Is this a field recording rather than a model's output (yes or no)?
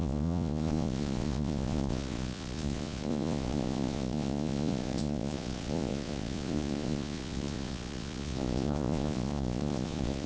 no